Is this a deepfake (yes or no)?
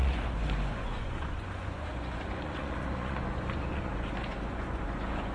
yes